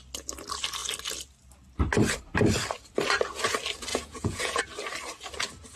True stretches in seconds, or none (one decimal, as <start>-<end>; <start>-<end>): 0.0-3.9; 4.6-5.8